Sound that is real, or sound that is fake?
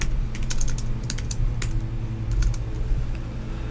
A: real